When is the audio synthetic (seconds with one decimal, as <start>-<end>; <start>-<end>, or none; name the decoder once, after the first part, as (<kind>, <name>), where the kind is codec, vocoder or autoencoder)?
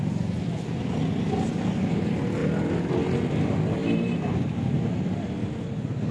3.8-4.8 (vocoder, BigVGAN v2)